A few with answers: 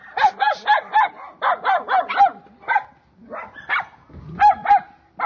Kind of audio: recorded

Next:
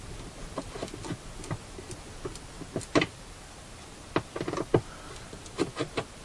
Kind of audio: recorded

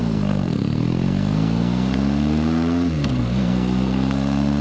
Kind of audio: remade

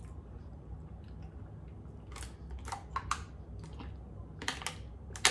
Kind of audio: recorded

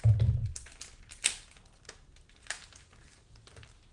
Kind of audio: recorded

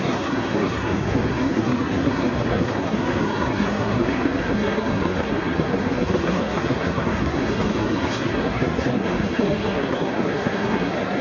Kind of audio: remade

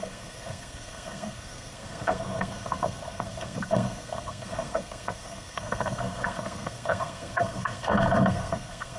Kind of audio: remade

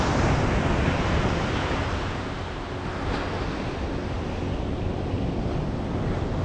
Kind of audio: recorded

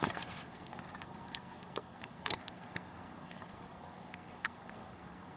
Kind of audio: remade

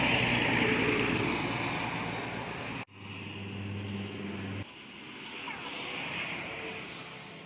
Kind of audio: recorded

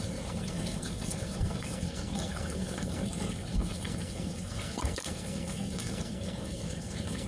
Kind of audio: remade